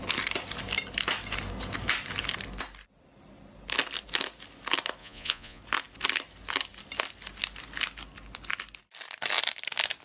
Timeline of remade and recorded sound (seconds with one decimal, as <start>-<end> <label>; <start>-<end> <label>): 0.0-5.0 recorded; 5.0-5.6 remade; 5.6-10.0 recorded